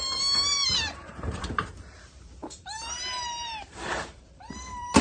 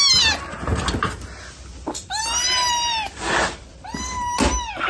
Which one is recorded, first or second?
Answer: second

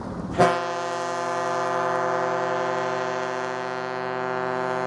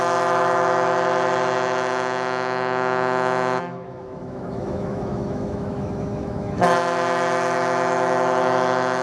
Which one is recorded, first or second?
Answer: first